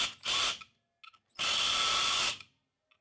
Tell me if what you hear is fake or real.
real